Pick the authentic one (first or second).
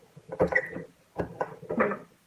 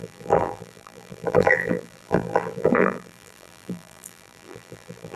first